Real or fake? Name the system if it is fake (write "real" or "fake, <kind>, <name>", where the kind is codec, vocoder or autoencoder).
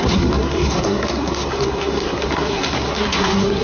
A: fake, codec, SNAC